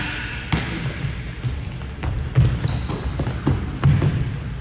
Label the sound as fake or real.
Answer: real